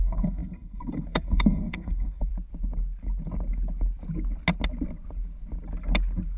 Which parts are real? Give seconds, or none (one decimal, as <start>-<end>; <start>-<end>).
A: 2.3-6.4